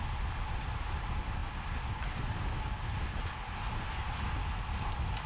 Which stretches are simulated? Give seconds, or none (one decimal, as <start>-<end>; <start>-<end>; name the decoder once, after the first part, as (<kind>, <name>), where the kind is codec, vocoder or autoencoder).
none